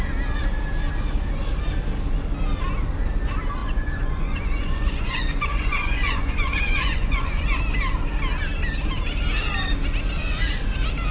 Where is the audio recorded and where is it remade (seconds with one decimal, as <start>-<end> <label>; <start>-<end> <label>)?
0.0-3.6 recorded; 3.6-7.6 remade; 7.6-11.1 recorded